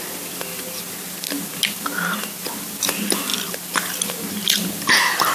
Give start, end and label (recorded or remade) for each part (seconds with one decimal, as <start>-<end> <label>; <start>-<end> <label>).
0.0-5.3 recorded